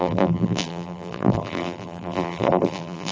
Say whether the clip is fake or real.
fake